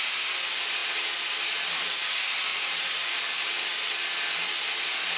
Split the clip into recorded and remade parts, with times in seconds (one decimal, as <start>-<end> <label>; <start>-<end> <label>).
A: 0.0-2.5 recorded; 2.5-3.2 remade; 3.2-5.2 recorded